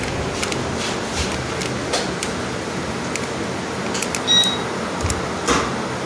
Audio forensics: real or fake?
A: real